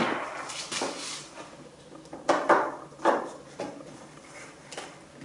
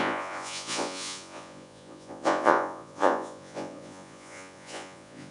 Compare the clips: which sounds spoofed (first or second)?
second